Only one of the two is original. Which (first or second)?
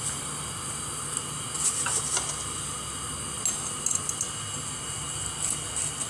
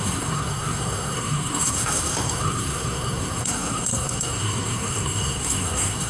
first